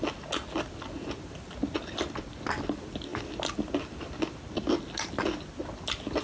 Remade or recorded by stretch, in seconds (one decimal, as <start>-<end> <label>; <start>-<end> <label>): 0.0-6.2 recorded